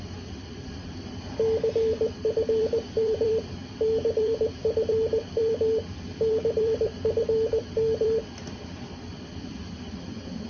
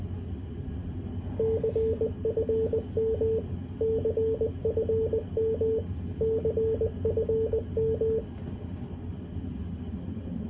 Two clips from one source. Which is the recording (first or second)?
second